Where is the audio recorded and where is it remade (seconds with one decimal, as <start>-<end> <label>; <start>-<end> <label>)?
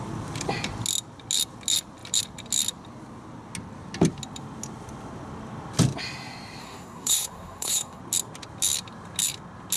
0.0-6.6 recorded; 6.6-8.0 remade; 8.0-9.8 recorded